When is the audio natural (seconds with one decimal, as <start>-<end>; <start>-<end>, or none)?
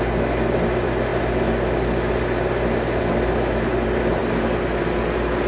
0.0-5.5